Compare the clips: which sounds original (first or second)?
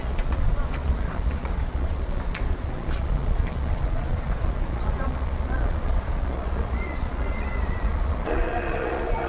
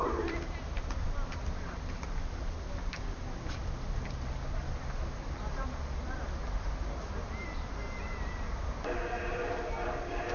second